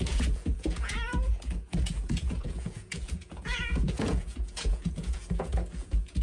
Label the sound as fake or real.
fake